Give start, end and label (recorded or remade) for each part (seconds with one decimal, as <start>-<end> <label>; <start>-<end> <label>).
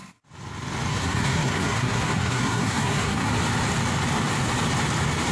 0.0-0.9 recorded; 0.9-3.3 remade; 3.3-5.3 recorded